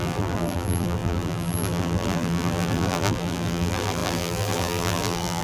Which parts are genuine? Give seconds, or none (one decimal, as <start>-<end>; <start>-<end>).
none